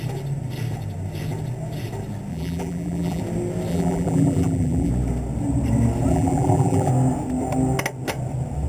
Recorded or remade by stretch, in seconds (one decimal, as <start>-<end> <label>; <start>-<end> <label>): 0.0-2.3 recorded; 2.3-3.2 remade; 3.2-3.7 recorded; 3.7-4.9 remade; 4.9-6.1 recorded; 6.1-6.9 remade; 6.9-8.7 recorded